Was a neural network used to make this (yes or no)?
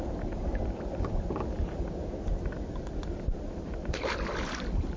no